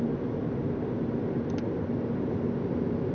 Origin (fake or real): real